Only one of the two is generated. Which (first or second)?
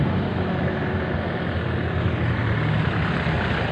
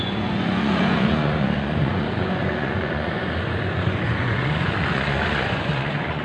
second